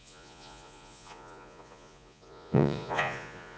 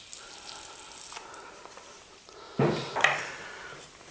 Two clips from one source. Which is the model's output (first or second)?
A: first